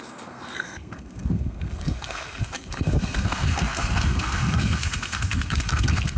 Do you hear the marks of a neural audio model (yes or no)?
yes